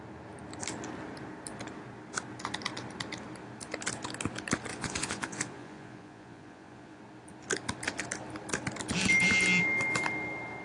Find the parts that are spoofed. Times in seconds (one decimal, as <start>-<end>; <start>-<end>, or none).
4.7-7.0